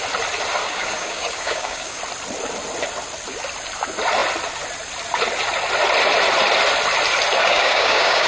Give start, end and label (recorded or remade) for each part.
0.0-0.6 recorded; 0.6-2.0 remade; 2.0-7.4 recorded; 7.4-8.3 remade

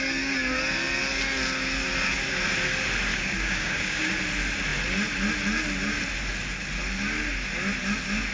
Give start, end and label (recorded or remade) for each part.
0.0-3.1 recorded; 3.1-4.1 remade; 4.1-8.3 recorded

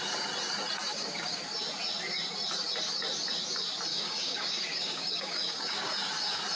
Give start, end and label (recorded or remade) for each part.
0.0-0.9 recorded; 0.9-1.4 remade; 1.4-3.9 recorded; 3.9-5.9 remade; 5.9-6.6 recorded

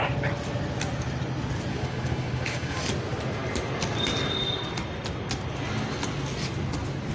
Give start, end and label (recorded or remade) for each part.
0.0-1.7 recorded; 1.7-2.8 remade; 2.8-7.1 recorded